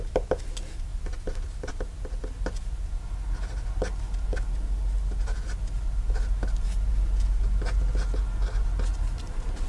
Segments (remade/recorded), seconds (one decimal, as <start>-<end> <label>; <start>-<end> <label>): 0.0-9.7 recorded